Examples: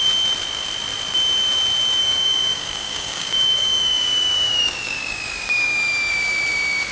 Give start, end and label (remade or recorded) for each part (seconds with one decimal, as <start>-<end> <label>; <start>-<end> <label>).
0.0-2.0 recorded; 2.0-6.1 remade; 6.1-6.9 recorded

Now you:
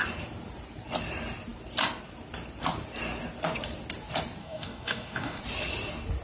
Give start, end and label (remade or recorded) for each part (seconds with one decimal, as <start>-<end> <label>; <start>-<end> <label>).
0.0-4.4 recorded; 4.4-5.4 remade; 5.4-6.2 recorded

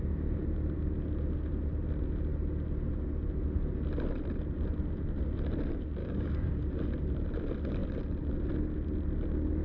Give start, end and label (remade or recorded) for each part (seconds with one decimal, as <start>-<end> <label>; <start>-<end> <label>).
0.0-6.0 recorded; 6.0-6.6 remade; 6.6-9.6 recorded

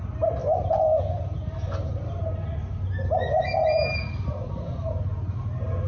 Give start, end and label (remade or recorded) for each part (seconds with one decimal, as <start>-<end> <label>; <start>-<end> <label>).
0.0-5.9 recorded